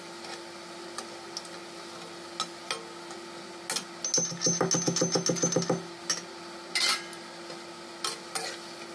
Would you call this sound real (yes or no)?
yes